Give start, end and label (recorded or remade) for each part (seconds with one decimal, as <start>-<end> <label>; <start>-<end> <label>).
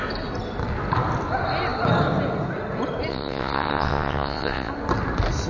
0.0-3.1 recorded; 3.1-4.7 remade; 4.7-5.5 recorded